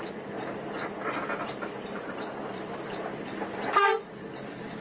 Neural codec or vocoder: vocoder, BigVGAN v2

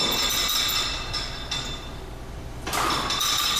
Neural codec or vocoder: vocoder, BigVGAN v2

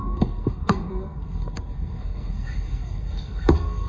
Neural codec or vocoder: codec, SNAC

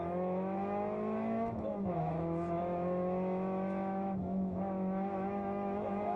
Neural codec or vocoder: autoencoder, DAC-VAE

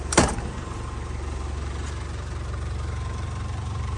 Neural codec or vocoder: vocoder, BigVGAN v2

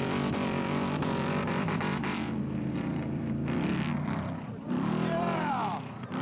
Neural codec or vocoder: vocoder, BigVGAN v2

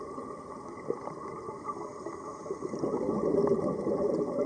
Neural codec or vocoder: none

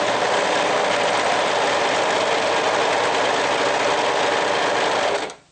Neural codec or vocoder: none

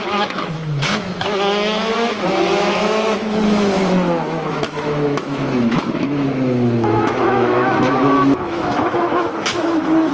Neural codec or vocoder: autoencoder, DAC-VAE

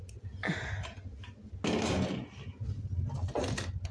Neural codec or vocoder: none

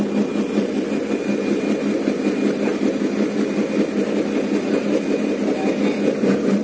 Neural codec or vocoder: none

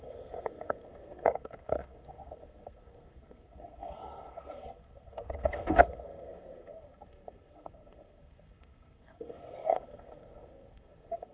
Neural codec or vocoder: codec, SNAC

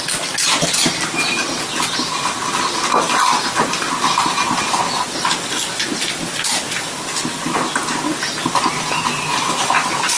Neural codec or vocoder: none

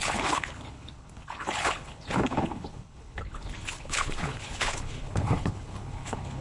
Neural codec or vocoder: codec, HILCodec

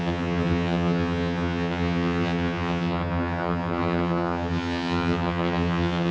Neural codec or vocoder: vocoder, HiFi-GAN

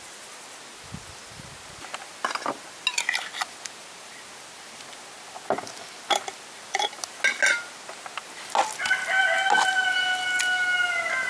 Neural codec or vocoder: none